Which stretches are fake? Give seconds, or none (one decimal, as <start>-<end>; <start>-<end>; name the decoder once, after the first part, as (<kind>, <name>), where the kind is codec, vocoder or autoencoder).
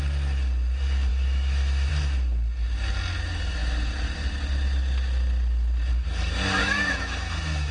1.1-1.9 (autoencoder, DAC-VAE); 6.6-7.7